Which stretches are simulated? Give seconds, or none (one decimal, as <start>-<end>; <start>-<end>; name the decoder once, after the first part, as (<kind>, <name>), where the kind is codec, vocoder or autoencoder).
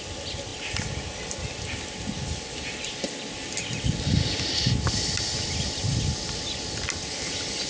none